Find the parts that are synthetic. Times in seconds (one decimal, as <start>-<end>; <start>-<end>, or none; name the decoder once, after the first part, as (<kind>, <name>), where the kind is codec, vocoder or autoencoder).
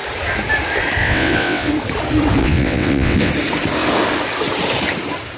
1.0-1.7 (vocoder, WaveNeXt); 2.4-3.3